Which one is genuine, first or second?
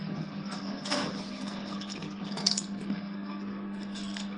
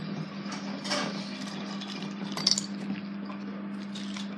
second